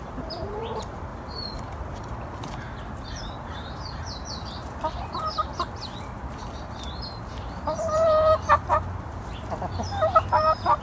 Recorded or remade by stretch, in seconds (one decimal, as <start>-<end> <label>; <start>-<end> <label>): 0.0-1.1 remade; 1.1-3.2 recorded; 3.2-5.5 remade; 5.5-7.2 recorded; 7.2-10.8 remade